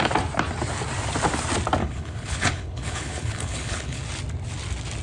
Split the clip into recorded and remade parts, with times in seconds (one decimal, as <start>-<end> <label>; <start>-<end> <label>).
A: 0.0-1.8 recorded; 1.8-4.0 remade; 4.0-5.0 recorded